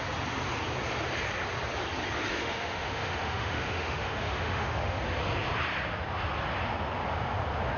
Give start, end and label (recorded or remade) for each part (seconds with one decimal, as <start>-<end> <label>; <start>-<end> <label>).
0.0-2.3 recorded; 2.3-5.0 remade; 5.0-7.8 recorded